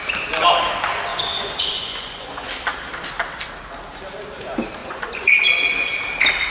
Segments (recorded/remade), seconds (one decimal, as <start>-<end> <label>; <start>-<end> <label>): 0.0-1.1 recorded; 1.1-2.5 remade; 2.5-4.8 recorded; 4.8-5.9 remade; 5.9-6.5 recorded